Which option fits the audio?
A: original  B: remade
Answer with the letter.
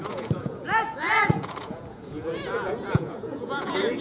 B